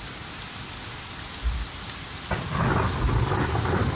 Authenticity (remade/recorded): recorded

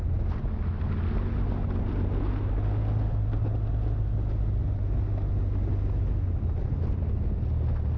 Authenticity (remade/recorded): recorded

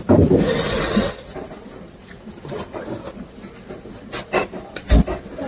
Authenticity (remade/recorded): recorded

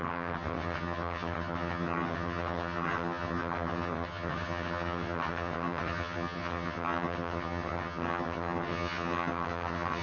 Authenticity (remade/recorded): remade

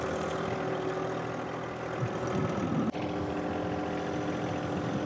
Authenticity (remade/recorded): recorded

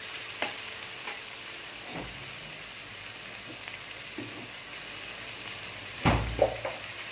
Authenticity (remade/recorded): recorded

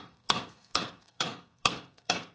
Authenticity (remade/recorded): remade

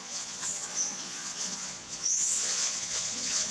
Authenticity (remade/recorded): remade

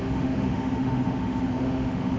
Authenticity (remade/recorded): remade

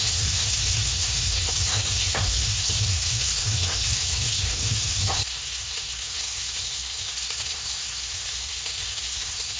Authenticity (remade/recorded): remade